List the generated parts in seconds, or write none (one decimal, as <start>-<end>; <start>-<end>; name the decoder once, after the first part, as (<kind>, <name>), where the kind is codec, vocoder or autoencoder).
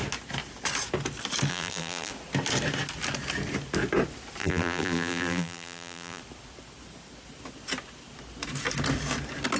1.5-2.1 (vocoder, BigVGAN v2); 4.4-6.2